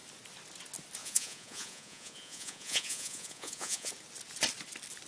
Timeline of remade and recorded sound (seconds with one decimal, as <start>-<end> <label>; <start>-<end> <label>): 0.0-1.0 recorded; 1.0-3.9 remade; 3.9-5.1 recorded